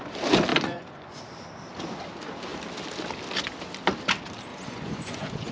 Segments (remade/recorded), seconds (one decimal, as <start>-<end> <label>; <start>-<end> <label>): 0.0-0.5 recorded; 0.5-1.2 remade; 1.2-4.5 recorded; 4.5-5.5 remade